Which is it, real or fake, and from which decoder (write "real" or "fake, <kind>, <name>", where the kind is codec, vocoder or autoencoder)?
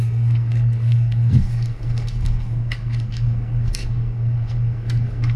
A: fake, codec, SNAC